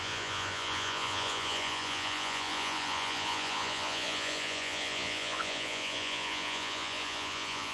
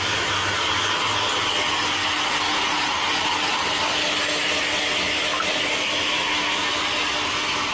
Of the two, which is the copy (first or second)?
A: first